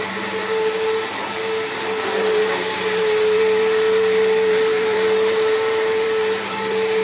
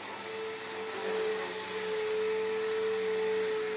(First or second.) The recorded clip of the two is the second